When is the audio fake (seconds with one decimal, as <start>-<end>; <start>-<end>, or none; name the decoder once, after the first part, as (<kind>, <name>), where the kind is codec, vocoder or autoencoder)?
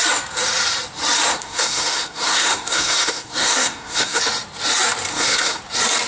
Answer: 1.3-4.2 (codec, SNAC); 5.1-5.6